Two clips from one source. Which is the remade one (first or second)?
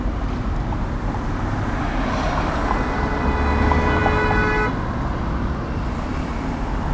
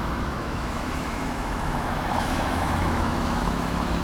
second